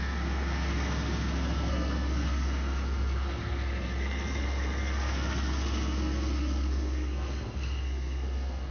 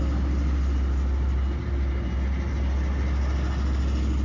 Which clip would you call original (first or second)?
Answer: second